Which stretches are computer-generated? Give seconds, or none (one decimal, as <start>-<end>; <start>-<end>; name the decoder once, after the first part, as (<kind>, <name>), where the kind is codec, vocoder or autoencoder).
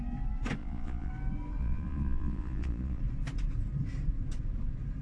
0.6-1.1 (vocoder, Vocos); 1.6-3.0